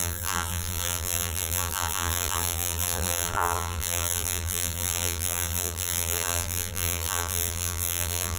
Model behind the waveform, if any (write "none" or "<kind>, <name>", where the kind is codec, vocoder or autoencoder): vocoder, BigVGAN v2